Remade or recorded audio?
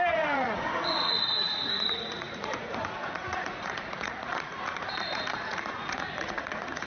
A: remade